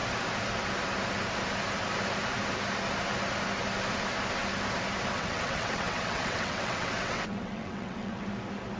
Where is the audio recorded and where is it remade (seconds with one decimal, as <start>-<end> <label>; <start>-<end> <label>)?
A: 0.0-5.1 recorded; 5.1-8.3 remade; 8.3-8.8 recorded